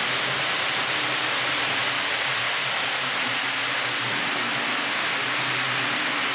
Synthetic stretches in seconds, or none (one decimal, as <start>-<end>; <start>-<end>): none